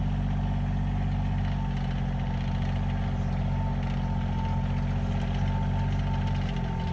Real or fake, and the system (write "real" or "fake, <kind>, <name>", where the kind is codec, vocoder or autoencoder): real